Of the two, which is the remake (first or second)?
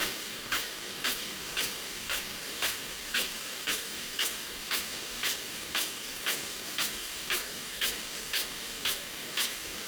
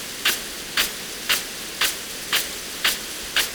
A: first